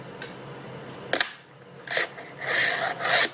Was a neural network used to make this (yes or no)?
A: no